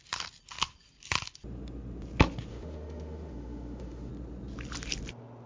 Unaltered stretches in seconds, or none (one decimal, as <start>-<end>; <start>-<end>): 0.0-2.5; 4.1-5.5